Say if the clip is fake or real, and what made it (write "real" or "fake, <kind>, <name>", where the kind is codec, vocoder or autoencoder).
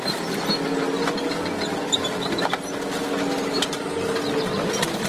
real